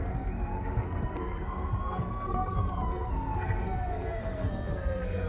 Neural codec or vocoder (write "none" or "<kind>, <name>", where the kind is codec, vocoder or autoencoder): codec, SNAC